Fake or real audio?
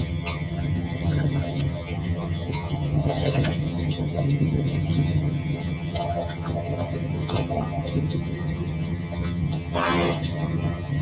fake